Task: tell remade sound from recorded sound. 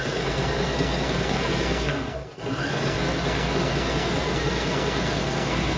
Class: remade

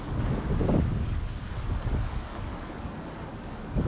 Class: remade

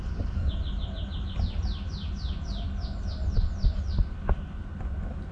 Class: recorded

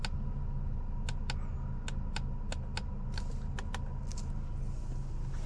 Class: recorded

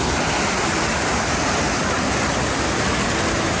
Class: recorded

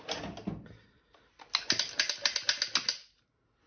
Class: recorded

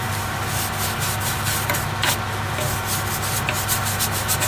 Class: recorded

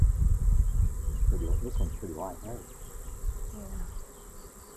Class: recorded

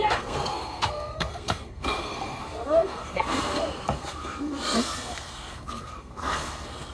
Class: remade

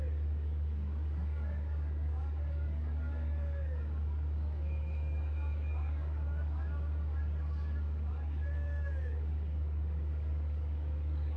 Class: remade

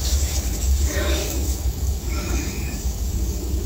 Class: remade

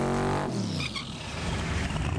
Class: recorded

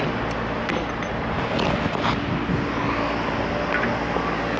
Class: recorded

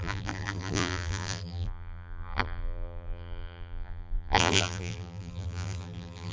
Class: remade